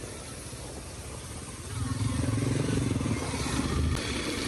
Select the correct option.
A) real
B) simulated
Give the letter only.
A